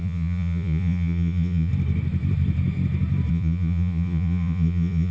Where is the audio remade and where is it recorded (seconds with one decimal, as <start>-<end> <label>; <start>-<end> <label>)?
0.0-1.7 remade; 1.7-3.3 recorded; 3.3-5.1 remade